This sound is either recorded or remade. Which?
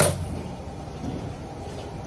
recorded